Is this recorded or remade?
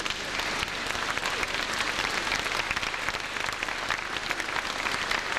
recorded